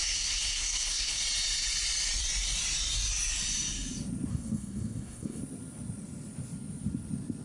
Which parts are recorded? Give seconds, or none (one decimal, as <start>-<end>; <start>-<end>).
1.2-4.3; 5.4-7.4